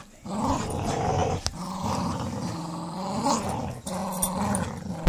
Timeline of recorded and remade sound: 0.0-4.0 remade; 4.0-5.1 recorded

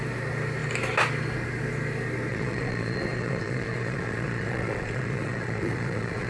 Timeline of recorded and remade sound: 0.0-2.3 recorded; 2.3-6.3 remade